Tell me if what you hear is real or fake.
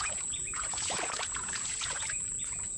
fake